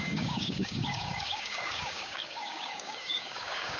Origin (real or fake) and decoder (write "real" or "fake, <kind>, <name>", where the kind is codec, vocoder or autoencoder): fake, codec, DAC